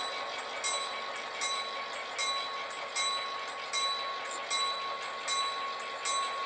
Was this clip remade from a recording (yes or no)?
no